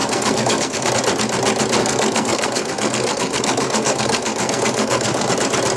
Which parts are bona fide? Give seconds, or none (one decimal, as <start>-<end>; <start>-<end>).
0.9-1.8; 5.3-5.8